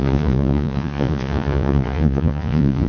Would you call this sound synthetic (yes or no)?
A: yes